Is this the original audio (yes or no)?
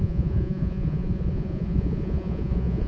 no